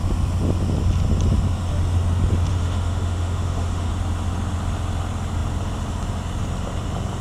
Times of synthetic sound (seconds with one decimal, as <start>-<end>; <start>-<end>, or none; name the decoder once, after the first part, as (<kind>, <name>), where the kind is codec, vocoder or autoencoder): 2.5-3.9 (autoencoder, DAC-VAE)